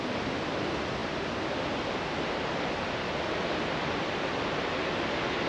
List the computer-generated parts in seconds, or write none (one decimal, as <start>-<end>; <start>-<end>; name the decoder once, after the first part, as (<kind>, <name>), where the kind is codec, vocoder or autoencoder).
none